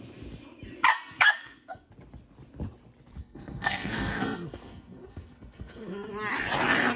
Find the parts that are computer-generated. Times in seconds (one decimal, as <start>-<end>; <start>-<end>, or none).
0.9-1.9; 3.2-6.1